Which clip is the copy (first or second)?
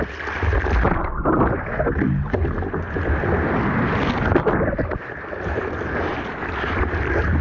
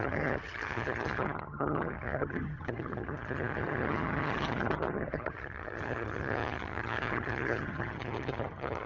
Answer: second